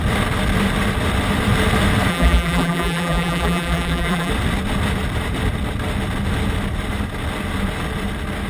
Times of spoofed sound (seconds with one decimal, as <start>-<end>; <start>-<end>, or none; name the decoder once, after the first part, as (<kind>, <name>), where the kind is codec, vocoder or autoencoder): 2.1-4.3 (vocoder, BigVGAN v2)